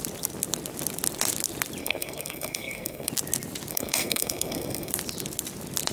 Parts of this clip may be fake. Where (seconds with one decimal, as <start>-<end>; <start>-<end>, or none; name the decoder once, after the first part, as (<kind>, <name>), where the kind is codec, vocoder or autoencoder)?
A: 1.8-3.1 (codec, SNAC); 3.7-4.9